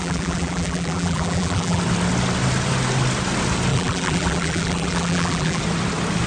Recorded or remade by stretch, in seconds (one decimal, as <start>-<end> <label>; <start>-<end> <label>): 0.0-1.8 remade; 1.8-3.7 recorded; 3.7-5.6 remade; 5.6-6.3 recorded